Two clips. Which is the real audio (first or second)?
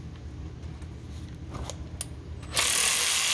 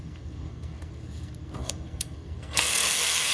first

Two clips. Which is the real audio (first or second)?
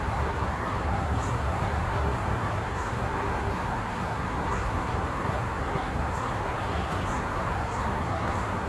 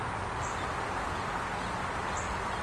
second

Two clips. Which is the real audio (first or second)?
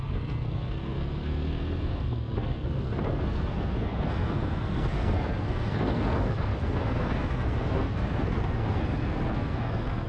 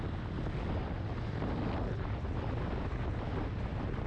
second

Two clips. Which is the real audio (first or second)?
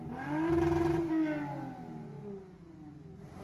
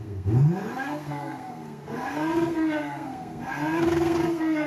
first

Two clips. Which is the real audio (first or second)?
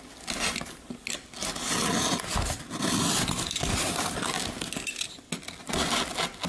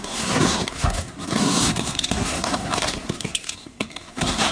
first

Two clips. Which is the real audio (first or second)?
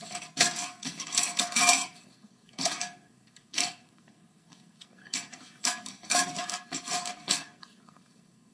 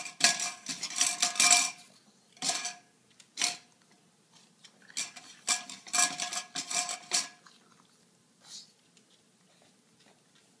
second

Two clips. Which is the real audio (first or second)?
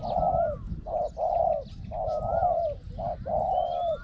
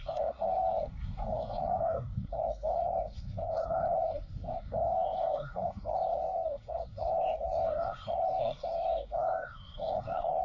first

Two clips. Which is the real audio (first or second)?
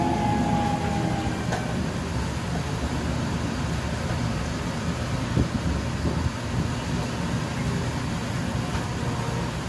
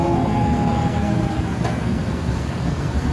first